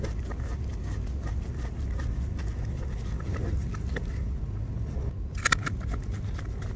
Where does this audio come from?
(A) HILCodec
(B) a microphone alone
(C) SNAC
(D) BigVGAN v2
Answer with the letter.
B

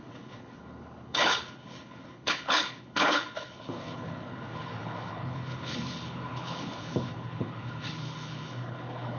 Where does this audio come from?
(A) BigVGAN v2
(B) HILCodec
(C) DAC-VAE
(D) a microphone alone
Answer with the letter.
B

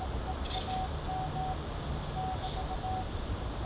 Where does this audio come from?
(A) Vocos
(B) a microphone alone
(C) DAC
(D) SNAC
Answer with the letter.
B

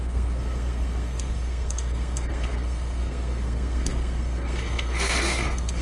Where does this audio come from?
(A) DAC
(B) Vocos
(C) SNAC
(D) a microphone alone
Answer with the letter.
C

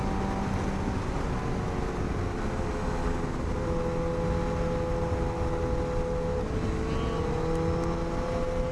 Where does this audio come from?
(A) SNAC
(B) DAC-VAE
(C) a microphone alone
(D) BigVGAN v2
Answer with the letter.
C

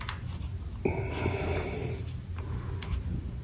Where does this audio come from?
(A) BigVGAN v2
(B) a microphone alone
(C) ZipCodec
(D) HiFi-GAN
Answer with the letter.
B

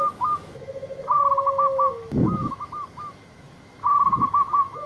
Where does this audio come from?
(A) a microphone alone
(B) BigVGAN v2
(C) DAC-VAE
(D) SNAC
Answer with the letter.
C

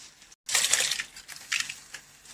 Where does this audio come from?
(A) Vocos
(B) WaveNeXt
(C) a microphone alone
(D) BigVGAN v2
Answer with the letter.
C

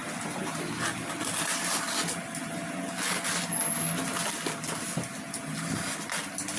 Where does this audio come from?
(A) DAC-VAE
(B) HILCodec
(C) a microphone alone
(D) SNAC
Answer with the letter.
C